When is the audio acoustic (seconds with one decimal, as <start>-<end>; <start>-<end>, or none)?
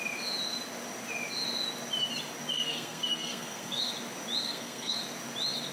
0.0-2.5; 3.9-4.4; 5.0-5.7